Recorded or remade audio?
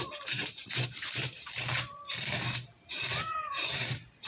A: remade